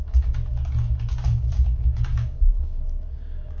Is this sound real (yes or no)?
no